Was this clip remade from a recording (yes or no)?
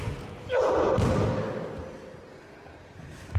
no